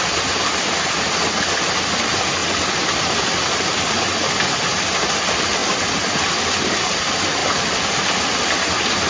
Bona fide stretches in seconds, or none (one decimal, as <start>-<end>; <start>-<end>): 0.0-2.4; 3.9-7.4; 8.0-9.1